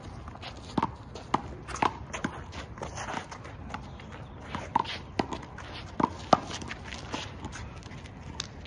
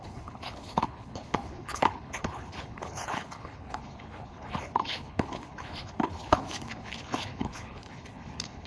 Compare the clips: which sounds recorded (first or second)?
first